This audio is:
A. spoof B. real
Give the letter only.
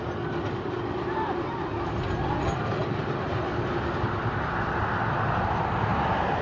B